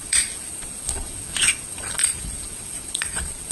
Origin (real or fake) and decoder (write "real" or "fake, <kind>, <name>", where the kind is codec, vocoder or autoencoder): fake, vocoder, Vocos